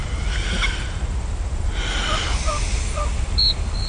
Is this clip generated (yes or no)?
no